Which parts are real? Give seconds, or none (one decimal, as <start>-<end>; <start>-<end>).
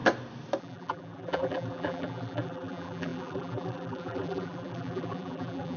0.0-0.6